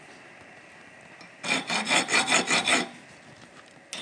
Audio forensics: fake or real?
real